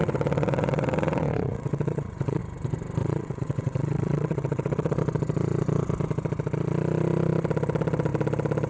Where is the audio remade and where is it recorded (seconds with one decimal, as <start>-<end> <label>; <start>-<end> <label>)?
0.0-2.4 remade; 2.4-3.0 recorded; 3.0-5.0 remade; 5.0-8.7 recorded